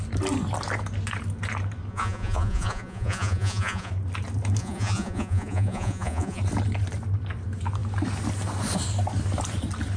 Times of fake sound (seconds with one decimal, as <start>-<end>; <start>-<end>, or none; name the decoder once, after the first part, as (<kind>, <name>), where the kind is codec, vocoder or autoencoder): 1.9-3.9 (vocoder, Vocos); 4.6-6.4